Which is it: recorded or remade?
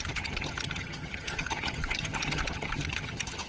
remade